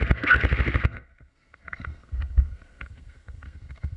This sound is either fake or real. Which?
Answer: fake